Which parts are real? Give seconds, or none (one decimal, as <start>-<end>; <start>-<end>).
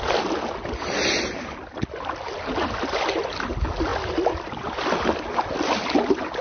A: 0.0-6.4